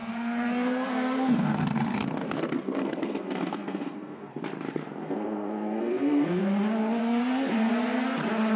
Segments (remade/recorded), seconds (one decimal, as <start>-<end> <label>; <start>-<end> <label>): 0.0-4.3 remade; 4.3-5.0 recorded; 5.0-6.4 remade; 6.4-7.0 recorded; 7.0-7.7 remade; 7.7-8.6 recorded